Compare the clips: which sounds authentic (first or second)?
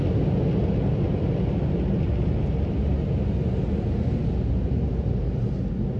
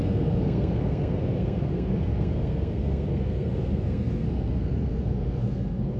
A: first